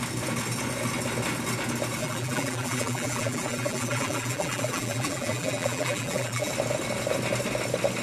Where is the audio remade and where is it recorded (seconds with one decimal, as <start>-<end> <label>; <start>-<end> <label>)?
0.0-2.0 recorded; 2.0-6.5 remade; 6.5-8.0 recorded